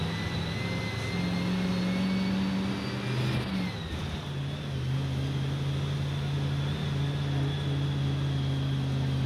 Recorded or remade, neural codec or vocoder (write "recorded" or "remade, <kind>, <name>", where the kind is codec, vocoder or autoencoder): recorded